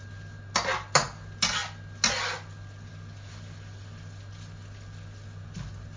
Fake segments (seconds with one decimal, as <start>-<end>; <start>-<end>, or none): none